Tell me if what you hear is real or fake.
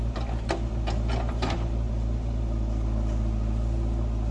real